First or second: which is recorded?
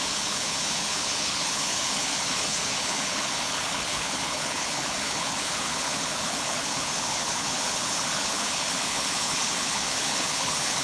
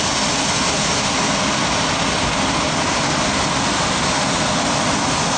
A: second